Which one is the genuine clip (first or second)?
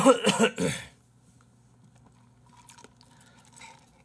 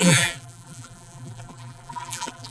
first